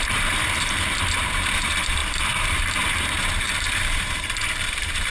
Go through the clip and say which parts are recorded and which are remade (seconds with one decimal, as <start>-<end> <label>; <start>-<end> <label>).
0.0-5.1 remade